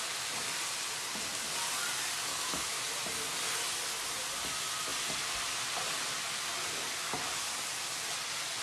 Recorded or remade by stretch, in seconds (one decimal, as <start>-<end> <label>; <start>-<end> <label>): 0.0-2.3 recorded; 2.3-2.8 remade; 2.8-8.6 recorded